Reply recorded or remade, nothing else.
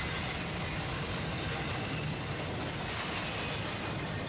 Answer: recorded